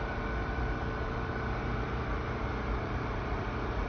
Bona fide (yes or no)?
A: no